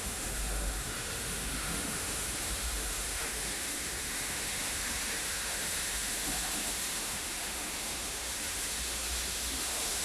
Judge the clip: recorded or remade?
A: remade